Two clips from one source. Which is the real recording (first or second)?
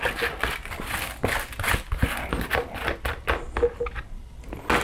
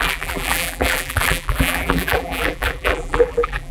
first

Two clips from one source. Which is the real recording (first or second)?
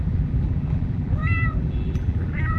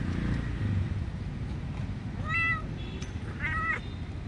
second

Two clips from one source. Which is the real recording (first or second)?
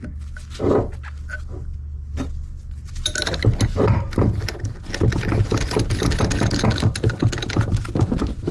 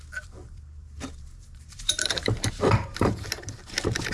first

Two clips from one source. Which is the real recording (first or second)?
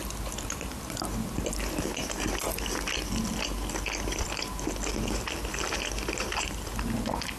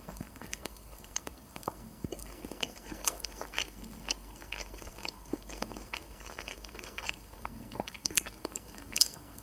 first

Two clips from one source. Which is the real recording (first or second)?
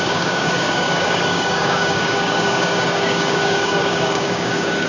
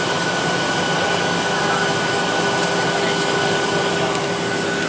second